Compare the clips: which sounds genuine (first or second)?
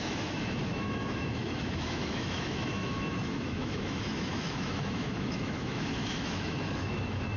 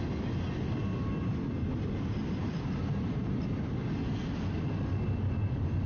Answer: second